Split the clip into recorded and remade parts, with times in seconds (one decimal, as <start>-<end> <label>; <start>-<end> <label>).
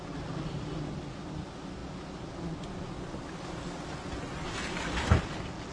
0.0-5.7 recorded